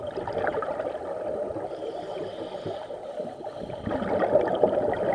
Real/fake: real